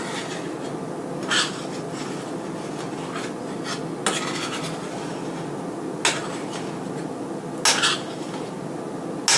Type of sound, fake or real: real